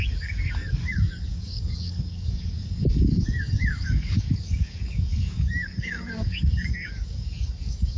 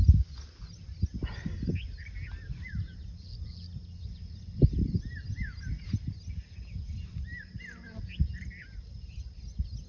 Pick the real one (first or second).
second